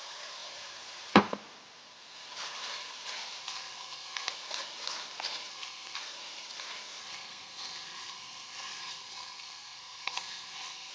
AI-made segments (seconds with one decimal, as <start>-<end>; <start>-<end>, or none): 3.4-4.3; 5.5-6.0; 7.0-10.9